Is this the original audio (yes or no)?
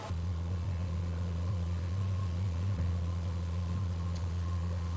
no